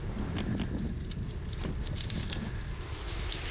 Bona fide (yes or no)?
yes